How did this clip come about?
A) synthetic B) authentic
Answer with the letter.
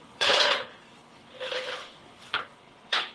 A